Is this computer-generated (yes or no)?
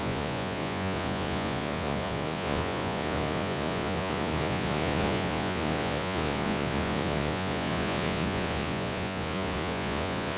yes